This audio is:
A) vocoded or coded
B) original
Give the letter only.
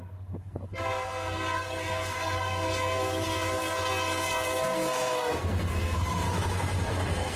A